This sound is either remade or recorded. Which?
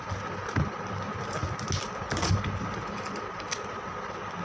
recorded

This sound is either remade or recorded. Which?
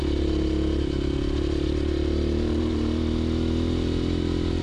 recorded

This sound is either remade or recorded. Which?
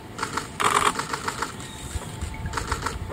recorded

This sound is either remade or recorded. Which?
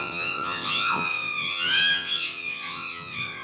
remade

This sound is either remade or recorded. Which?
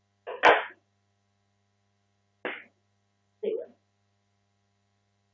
recorded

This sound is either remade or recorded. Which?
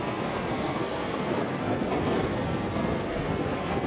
remade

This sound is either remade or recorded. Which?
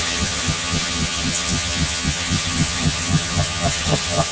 remade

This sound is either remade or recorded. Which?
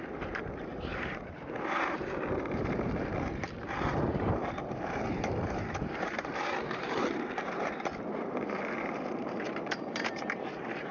remade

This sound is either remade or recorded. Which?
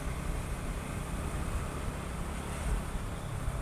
recorded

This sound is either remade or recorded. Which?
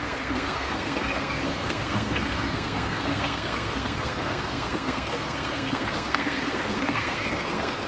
remade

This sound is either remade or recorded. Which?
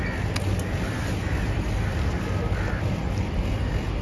recorded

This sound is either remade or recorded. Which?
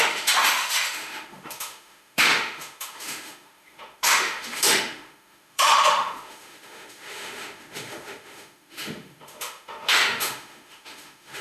remade